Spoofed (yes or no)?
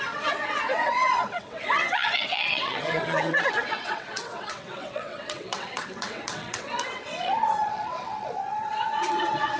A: yes